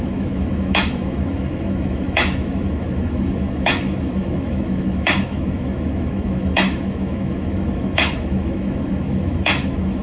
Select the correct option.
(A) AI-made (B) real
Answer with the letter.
A